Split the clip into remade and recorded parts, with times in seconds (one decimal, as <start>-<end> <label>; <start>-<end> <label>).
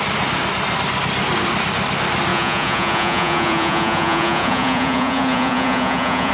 0.0-2.3 recorded; 2.3-6.3 remade